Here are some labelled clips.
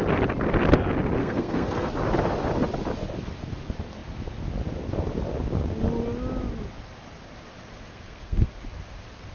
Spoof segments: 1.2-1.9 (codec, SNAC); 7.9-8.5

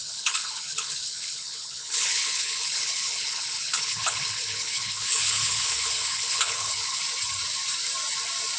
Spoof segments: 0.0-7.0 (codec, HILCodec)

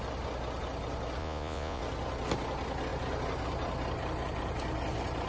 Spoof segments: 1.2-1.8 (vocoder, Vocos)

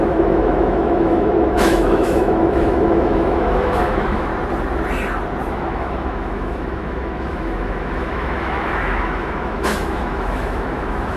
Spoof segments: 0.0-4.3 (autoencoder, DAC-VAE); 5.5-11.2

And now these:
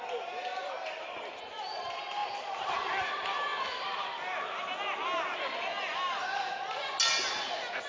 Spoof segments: none

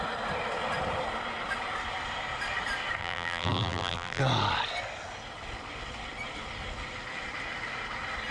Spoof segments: 3.0-4.2 (vocoder, BigVGAN v2)

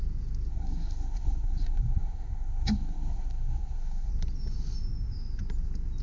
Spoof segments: 0.5-4.1 (codec, SNAC)